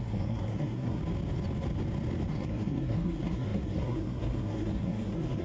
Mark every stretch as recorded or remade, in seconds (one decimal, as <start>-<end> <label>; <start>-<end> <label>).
0.0-1.0 remade; 1.0-2.3 recorded; 2.3-5.4 remade